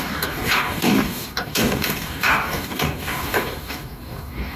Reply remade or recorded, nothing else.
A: remade